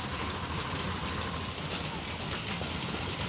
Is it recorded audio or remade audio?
recorded